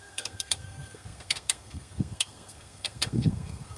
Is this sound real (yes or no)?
no